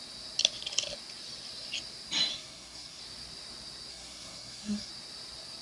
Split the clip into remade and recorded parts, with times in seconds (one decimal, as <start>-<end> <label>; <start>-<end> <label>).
0.0-2.3 recorded; 2.3-3.0 remade; 3.0-3.9 recorded; 3.9-4.9 remade; 4.9-5.6 recorded